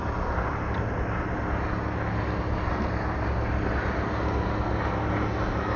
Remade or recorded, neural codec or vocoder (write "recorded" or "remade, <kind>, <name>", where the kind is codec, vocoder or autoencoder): recorded